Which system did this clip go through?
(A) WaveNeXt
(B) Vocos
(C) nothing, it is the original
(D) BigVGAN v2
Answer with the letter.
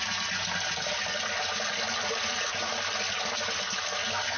C